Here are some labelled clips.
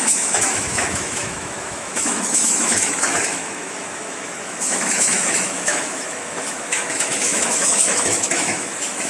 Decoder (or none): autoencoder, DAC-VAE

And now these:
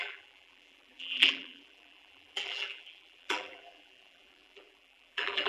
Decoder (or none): vocoder, BigVGAN v2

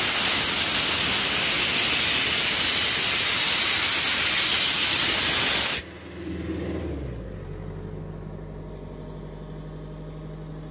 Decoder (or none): none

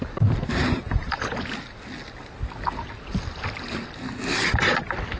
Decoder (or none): none